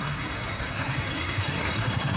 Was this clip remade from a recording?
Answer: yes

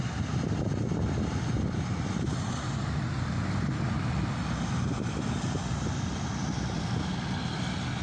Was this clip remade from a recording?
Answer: no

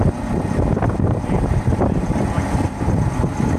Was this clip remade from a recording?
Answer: no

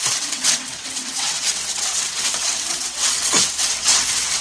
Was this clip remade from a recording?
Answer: yes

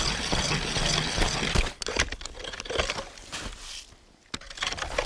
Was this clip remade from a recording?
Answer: no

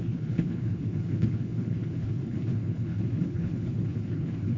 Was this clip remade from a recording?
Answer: yes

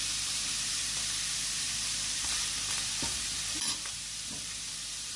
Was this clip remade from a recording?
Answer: yes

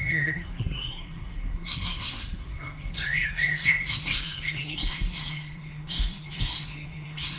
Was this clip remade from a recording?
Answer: yes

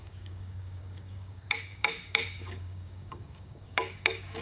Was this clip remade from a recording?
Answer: yes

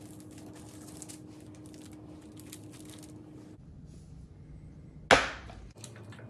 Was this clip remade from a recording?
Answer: no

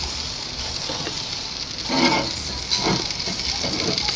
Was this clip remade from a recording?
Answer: no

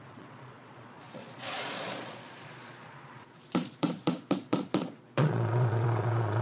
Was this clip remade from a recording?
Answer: yes